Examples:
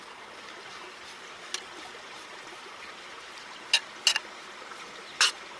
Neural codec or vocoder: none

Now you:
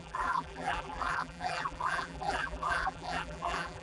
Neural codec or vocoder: vocoder, BigVGAN v2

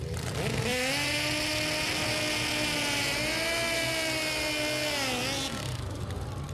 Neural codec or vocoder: none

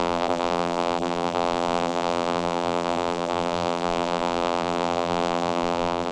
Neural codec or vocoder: vocoder, BigVGAN v2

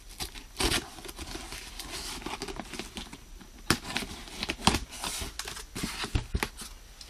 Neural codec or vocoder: none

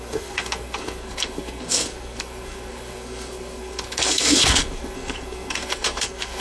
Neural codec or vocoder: codec, SNAC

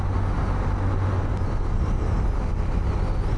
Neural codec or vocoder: none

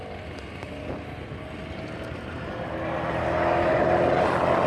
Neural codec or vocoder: none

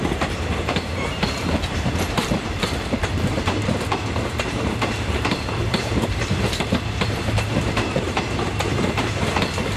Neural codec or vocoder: vocoder, BigVGAN v2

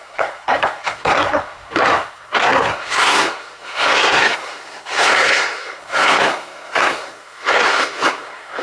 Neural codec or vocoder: codec, SNAC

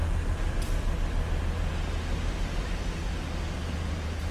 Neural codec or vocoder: none